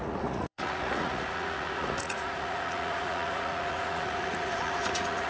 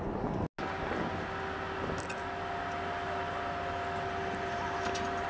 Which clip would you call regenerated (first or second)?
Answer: first